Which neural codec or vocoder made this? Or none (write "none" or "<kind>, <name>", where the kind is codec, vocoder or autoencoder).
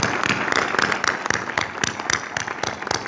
none